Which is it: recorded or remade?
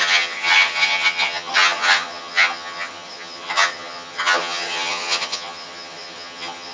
remade